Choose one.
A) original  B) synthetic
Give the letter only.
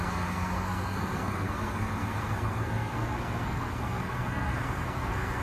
B